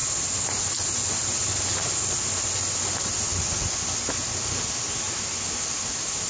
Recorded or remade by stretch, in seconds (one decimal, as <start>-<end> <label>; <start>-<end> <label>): 0.0-6.3 recorded